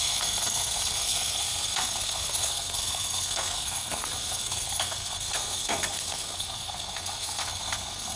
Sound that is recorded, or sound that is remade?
remade